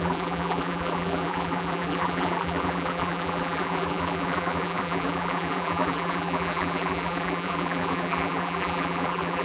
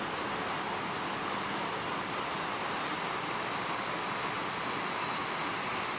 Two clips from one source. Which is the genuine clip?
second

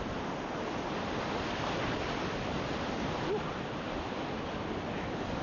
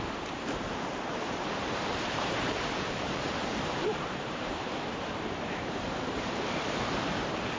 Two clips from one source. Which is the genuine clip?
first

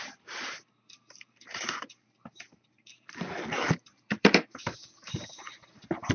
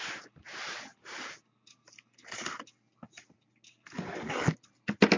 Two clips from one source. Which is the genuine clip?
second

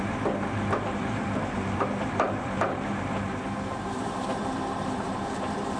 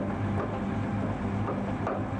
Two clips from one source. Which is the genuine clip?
second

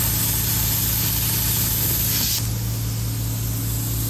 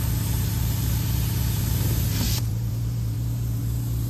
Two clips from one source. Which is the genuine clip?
first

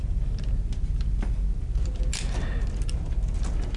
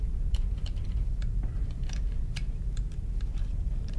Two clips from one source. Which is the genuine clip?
first